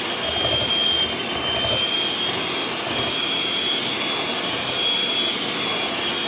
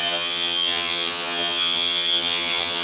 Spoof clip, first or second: second